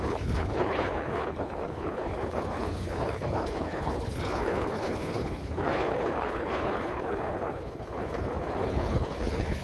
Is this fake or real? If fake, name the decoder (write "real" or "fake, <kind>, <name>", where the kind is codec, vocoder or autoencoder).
fake, codec, HILCodec